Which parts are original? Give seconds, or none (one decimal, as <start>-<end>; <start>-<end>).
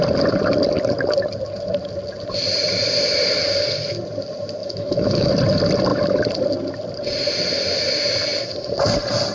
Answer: 0.0-4.6; 5.3-9.3